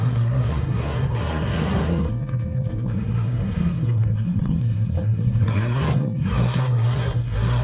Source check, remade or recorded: remade